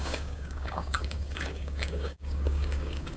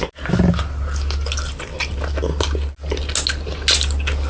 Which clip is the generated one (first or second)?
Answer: first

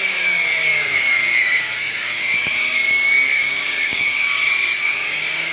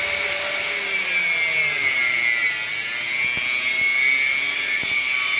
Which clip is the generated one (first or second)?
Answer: first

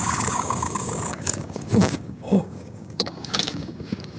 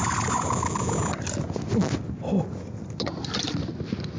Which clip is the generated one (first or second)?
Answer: first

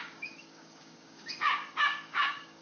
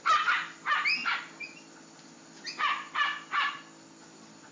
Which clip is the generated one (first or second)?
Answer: first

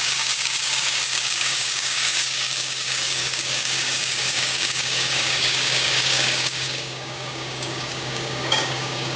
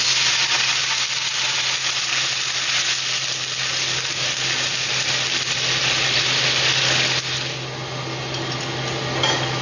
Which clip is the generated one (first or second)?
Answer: first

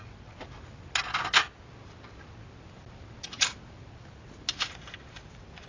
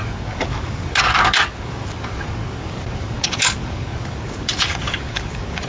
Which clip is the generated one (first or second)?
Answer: second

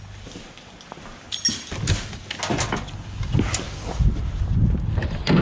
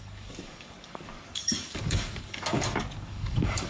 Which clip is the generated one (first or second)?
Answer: second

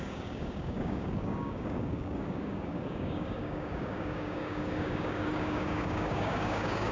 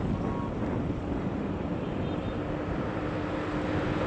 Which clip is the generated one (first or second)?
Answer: first